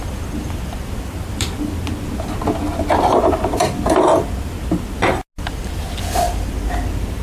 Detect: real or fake real